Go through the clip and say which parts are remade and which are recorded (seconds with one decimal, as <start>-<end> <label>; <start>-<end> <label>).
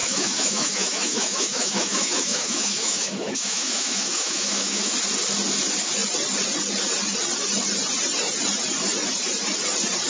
0.0-4.9 remade; 4.9-10.1 recorded